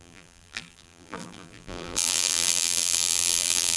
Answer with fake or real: fake